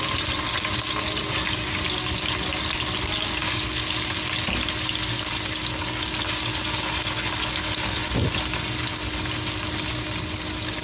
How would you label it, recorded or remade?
recorded